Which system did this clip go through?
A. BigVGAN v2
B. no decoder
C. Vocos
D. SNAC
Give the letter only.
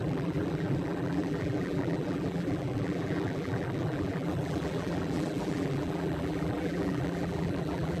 A